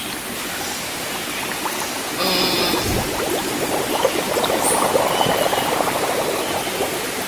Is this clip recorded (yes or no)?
yes